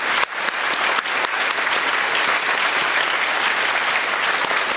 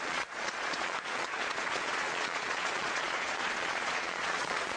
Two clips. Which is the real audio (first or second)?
first